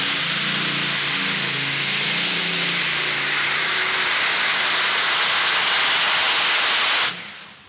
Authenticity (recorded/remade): recorded